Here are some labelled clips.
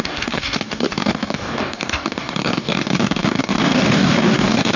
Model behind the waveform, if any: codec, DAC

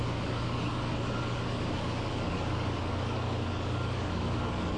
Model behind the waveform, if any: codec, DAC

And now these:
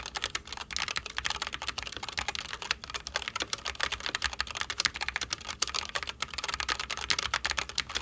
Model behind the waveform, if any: none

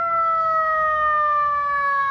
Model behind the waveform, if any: codec, DAC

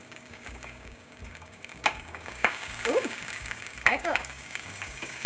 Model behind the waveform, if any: codec, DAC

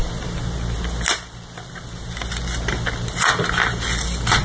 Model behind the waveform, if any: none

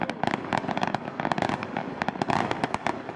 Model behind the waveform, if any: codec, DAC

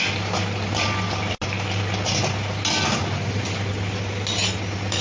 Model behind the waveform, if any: none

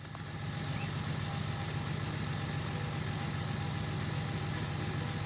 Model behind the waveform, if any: none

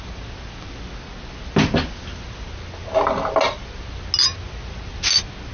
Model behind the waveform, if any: none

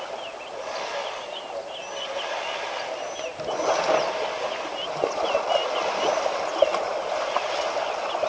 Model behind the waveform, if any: none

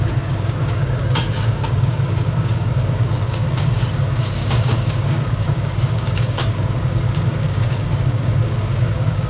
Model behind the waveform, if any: codec, DAC